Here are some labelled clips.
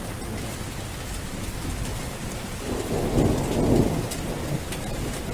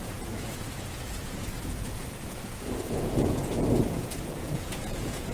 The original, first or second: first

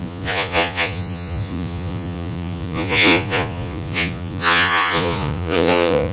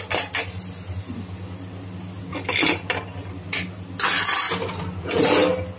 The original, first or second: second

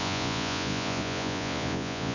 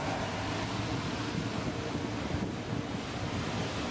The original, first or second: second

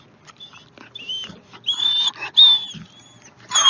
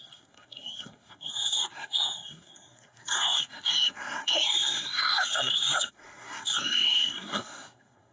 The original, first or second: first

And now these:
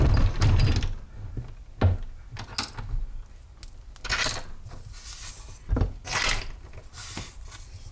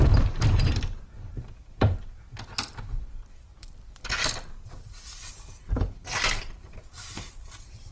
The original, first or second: first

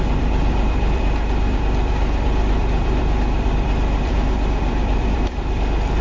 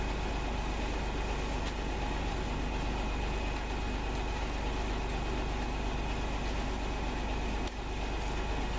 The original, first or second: second